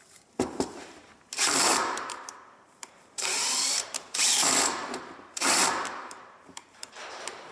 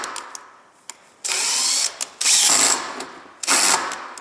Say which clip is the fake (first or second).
first